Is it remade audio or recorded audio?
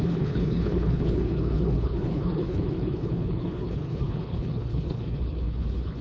remade